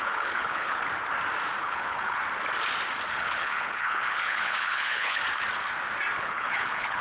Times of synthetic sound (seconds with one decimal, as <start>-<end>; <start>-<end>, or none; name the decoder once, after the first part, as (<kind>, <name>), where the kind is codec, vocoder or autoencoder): 0.0-0.8 (codec, HILCodec); 1.6-2.2; 3.1-5.2; 6.2-7.0